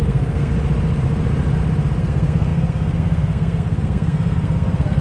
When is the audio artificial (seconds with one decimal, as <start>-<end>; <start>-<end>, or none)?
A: 0.0-0.5; 2.0-5.0